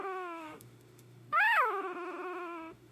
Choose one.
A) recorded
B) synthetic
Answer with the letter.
B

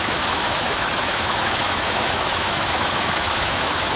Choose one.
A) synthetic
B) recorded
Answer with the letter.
A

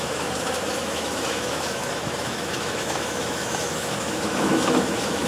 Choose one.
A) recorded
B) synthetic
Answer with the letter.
B